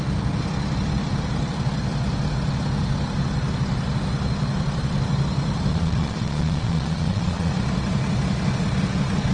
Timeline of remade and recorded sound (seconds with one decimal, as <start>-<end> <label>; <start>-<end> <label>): 0.0-5.7 recorded; 5.7-7.5 remade; 7.5-9.3 recorded